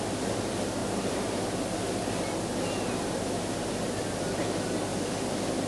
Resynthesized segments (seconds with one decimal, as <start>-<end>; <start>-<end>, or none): 0.8-1.4